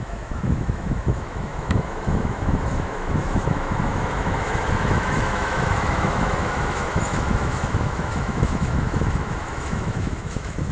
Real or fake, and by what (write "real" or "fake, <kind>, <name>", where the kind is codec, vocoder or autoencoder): fake, autoencoder, DAC-VAE